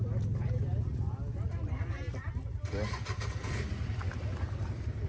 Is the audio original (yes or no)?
yes